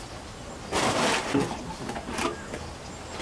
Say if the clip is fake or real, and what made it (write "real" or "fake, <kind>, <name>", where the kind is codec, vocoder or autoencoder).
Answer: real